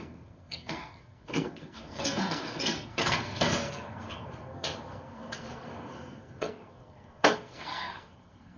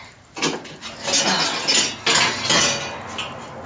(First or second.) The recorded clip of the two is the second